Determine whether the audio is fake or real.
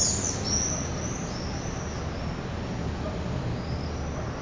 real